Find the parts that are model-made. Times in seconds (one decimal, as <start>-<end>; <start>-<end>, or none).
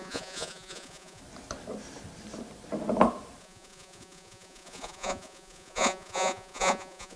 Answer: 0.0-1.2; 3.4-7.2